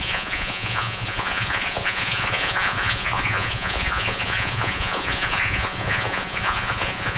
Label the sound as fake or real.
fake